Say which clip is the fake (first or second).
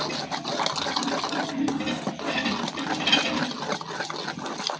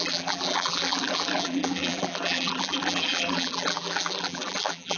second